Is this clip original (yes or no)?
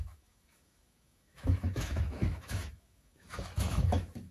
no